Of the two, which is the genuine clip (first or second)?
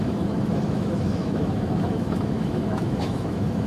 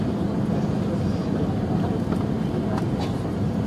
second